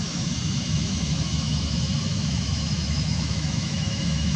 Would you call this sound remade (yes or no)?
yes